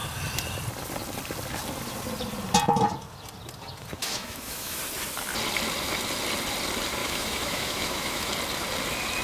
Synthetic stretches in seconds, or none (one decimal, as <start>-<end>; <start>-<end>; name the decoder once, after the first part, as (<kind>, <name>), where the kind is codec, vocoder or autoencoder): 4.0-4.8 (autoencoder, DAC-VAE); 7.0-8.3